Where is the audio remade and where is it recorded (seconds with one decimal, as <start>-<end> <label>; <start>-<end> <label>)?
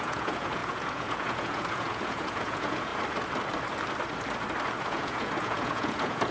0.0-2.9 remade; 2.9-4.8 recorded; 4.8-6.3 remade